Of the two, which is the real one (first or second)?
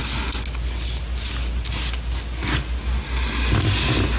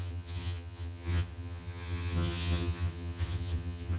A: first